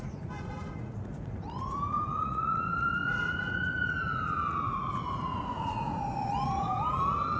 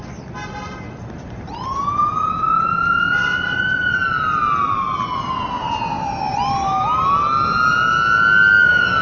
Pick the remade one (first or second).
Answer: first